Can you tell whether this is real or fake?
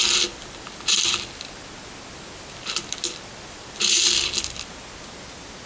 real